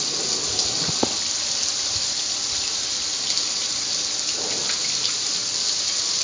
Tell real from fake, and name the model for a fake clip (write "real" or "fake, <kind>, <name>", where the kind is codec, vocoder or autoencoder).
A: real